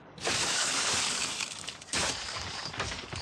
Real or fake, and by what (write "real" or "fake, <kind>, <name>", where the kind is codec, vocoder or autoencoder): fake, codec, DAC